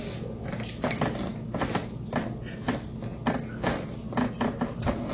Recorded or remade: recorded